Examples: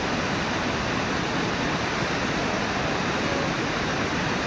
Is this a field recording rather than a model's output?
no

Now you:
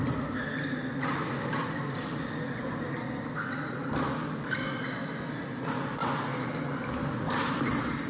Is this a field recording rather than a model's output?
yes